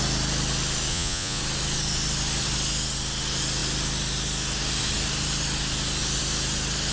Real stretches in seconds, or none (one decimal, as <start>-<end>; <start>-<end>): 0.0-0.9; 1.4-6.9